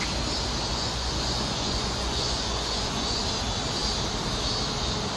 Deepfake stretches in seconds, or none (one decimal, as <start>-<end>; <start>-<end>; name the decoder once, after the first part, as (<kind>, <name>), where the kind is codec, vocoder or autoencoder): 0.7-3.2 (vocoder, Vocos)